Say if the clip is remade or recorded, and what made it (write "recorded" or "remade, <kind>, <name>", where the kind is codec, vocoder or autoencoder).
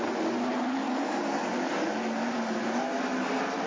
recorded